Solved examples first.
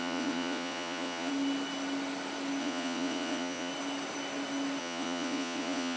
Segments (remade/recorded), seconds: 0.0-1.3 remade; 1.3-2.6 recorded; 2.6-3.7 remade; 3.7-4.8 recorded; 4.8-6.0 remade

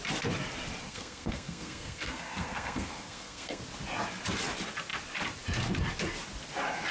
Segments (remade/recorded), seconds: 0.0-0.8 recorded; 0.8-3.6 remade; 3.6-6.9 recorded

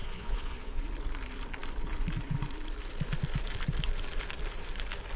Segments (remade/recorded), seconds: 0.0-0.8 remade; 0.8-5.2 recorded

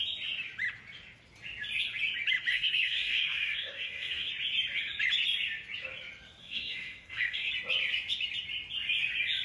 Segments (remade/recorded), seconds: 0.0-2.5 recorded; 2.5-4.3 remade; 4.3-6.4 recorded; 6.4-7.5 remade; 7.5-9.4 recorded

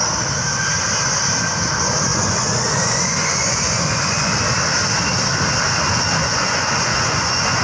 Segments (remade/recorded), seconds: 0.0-2.1 recorded; 2.1-4.3 remade; 4.3-6.2 recorded; 6.2-7.6 remade

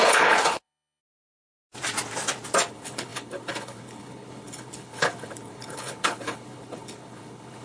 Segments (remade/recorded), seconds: 0.0-1.0 remade; 1.0-2.7 recorded; 2.7-7.6 remade

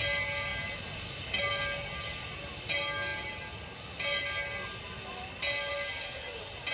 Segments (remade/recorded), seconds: 0.0-6.7 recorded